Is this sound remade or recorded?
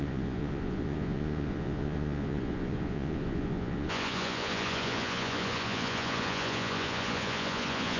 remade